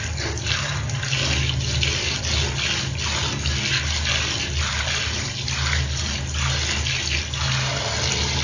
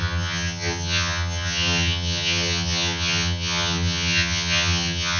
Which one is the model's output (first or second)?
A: second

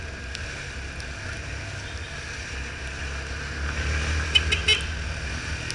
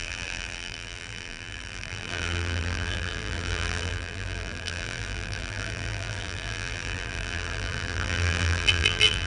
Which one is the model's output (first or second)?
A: second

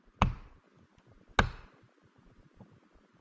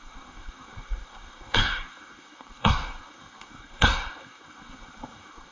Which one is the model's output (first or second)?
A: second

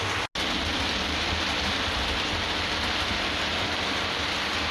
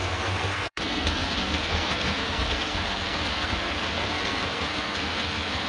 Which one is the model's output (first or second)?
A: second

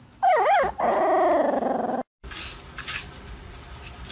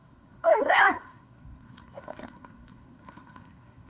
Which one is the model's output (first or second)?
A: second